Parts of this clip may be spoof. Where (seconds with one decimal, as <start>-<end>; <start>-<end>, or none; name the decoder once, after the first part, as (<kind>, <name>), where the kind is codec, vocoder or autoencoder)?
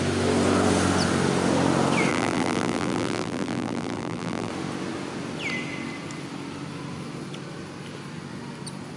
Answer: 2.1-4.5 (vocoder, BigVGAN v2)